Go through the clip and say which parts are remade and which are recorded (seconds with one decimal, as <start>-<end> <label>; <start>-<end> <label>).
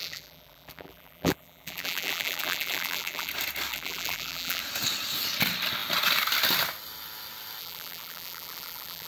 0.0-3.3 remade; 3.3-3.7 recorded; 3.7-4.6 remade; 4.6-7.6 recorded; 7.6-9.1 remade